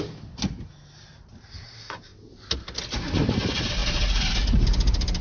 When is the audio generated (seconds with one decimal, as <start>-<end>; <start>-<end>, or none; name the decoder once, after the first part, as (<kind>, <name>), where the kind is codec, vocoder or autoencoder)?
none